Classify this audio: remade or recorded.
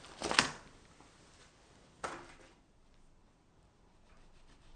recorded